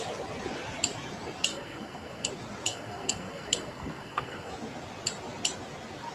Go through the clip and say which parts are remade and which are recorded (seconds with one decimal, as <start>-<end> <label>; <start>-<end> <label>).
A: 0.0-1.5 recorded; 1.5-2.3 remade; 2.3-2.7 recorded; 2.7-4.5 remade; 4.5-6.1 recorded